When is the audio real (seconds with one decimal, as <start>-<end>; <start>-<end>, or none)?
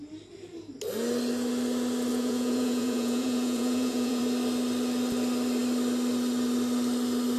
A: 0.0-2.1; 4.2-7.4